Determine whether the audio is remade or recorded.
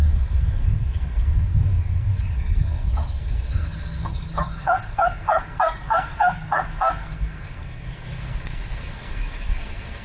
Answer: remade